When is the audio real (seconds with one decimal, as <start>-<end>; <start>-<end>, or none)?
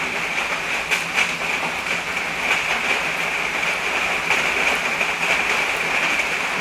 2.1-6.1